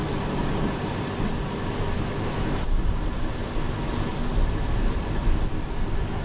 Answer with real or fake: real